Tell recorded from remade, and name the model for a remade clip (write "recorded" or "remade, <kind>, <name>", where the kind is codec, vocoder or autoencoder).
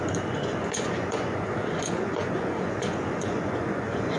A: remade, vocoder, Vocos